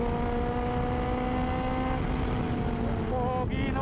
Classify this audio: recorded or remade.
recorded